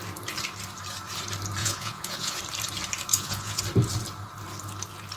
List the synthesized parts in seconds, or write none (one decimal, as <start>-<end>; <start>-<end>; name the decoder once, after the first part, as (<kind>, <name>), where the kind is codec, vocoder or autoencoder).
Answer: 1.6-2.4 (vocoder, Vocos); 3.1-3.6